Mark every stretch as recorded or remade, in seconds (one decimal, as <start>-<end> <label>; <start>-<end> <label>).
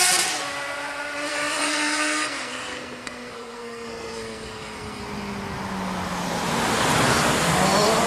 0.0-1.3 recorded; 1.3-5.0 remade; 5.0-8.1 recorded